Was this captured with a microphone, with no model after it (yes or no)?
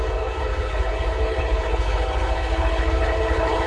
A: no